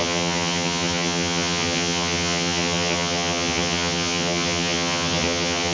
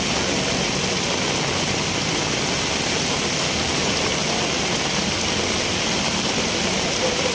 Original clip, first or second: second